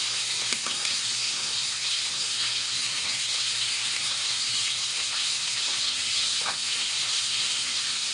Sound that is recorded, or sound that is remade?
remade